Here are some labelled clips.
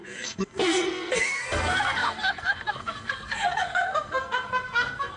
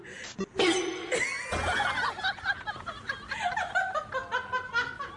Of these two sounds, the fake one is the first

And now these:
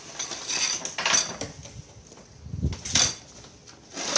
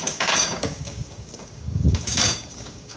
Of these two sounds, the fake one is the second